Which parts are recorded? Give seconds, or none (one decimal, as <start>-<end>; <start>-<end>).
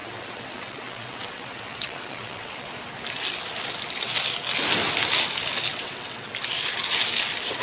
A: 2.7-5.7; 6.3-7.6